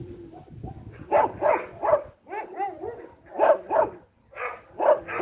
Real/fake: real